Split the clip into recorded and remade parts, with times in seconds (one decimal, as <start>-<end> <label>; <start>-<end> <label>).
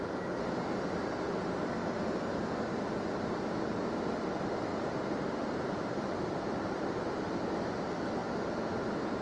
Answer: 0.0-4.7 recorded; 4.7-6.9 remade; 6.9-9.2 recorded